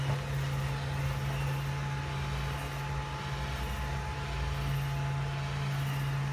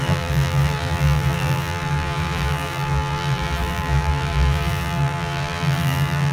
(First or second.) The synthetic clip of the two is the second